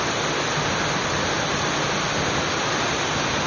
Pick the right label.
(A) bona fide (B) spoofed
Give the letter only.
A